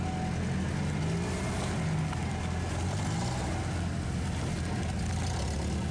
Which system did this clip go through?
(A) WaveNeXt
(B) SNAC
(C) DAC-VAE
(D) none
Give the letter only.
D